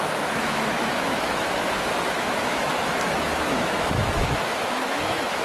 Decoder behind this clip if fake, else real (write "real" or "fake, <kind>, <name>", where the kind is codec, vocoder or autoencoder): fake, autoencoder, DAC-VAE